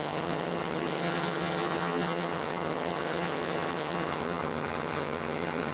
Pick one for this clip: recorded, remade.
remade